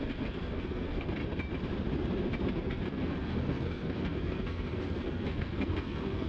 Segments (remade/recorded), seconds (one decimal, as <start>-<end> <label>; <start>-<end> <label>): 0.0-1.2 remade; 1.2-2.5 recorded; 2.5-6.3 remade